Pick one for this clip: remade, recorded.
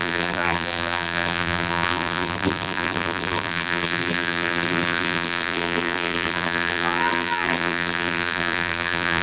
remade